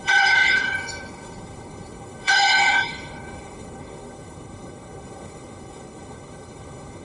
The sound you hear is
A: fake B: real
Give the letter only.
A